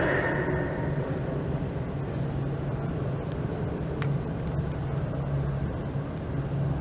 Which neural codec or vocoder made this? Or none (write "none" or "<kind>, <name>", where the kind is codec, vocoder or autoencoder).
none